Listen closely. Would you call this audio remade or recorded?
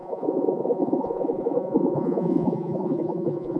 remade